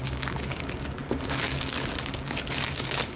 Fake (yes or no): yes